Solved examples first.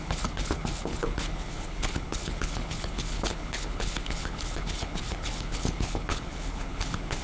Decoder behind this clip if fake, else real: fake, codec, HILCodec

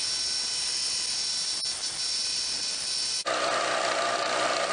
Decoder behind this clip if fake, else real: real